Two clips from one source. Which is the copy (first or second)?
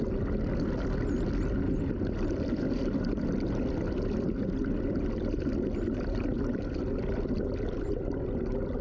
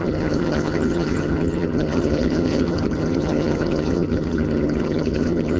second